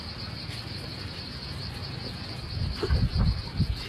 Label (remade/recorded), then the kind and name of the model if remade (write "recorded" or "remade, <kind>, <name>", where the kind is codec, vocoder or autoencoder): recorded